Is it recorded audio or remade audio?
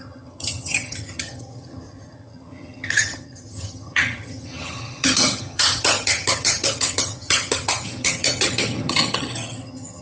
remade